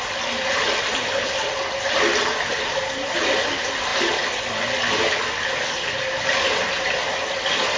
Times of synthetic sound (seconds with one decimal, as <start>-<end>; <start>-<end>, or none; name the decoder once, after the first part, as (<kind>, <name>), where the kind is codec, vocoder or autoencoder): none